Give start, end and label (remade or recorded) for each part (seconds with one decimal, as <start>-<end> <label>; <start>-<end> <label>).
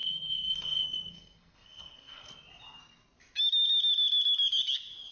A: 0.0-2.3 remade; 2.3-5.1 recorded